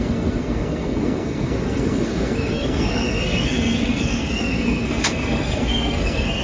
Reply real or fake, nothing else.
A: fake